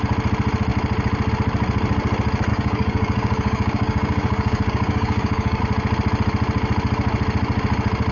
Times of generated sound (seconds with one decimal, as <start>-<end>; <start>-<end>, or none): 2.5-5.6